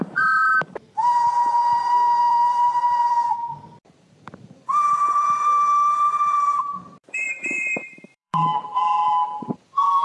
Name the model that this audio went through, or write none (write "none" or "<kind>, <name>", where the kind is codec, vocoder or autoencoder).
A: vocoder, BigVGAN v2